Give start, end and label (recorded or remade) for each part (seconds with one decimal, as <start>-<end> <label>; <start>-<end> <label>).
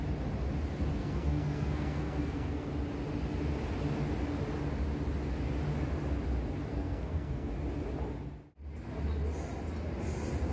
0.0-1.0 recorded; 1.0-2.7 remade; 2.7-6.7 recorded; 6.7-7.5 remade; 7.5-10.5 recorded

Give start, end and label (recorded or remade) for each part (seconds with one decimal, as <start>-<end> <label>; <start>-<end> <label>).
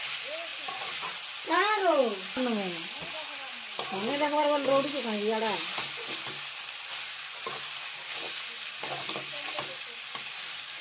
0.0-10.8 recorded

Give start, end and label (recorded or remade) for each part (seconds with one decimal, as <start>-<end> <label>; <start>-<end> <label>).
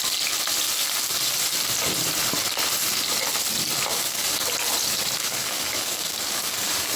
0.0-3.9 recorded; 3.9-4.5 remade; 4.5-5.2 recorded; 5.2-7.0 remade